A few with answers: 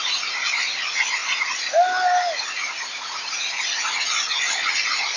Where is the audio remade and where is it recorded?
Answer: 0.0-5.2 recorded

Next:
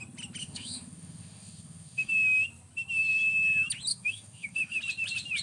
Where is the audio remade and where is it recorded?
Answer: 0.0-0.4 recorded; 0.4-2.1 remade; 2.1-3.9 recorded; 3.9-4.8 remade; 4.8-5.4 recorded

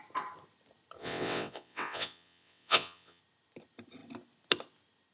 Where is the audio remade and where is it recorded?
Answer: 0.0-1.0 recorded; 1.0-3.2 remade; 3.2-5.1 recorded

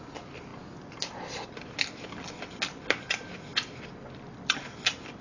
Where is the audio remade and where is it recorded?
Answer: 0.0-5.2 recorded

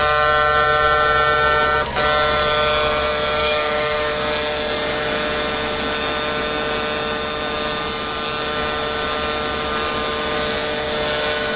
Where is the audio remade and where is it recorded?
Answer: 0.0-3.4 recorded; 3.4-4.1 remade; 4.1-11.6 recorded

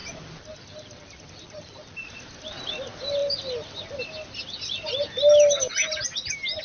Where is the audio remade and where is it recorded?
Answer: 0.0-6.6 recorded

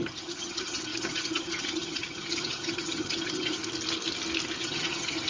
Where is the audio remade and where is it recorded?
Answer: 0.0-3.6 remade; 3.6-4.6 recorded; 4.6-5.3 remade

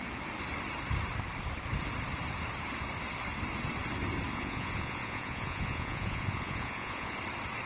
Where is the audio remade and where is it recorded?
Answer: 0.0-4.3 recorded; 4.3-7.2 remade; 7.2-7.7 recorded